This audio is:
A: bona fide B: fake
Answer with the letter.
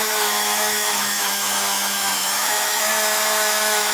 B